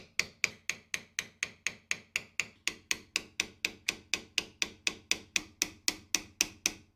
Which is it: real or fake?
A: real